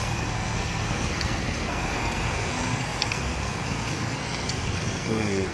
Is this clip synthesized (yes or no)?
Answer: yes